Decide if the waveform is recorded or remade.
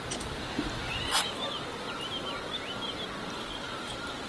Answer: recorded